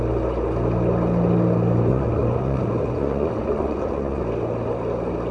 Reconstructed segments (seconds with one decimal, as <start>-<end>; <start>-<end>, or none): 1.9-4.2